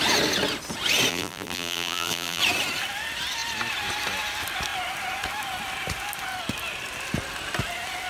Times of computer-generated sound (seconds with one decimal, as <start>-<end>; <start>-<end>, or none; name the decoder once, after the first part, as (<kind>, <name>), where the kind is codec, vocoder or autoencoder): 1.1-2.4 (vocoder, BigVGAN v2)